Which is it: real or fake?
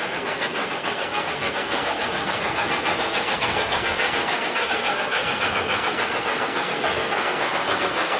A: fake